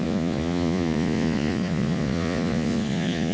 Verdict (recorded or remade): remade